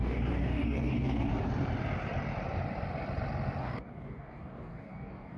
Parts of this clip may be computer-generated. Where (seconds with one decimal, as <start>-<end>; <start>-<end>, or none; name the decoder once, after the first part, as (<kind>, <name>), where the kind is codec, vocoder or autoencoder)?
0.0-1.3 (codec, DAC); 3.6-5.4